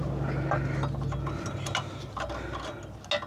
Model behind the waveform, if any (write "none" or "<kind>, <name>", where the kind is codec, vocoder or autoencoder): none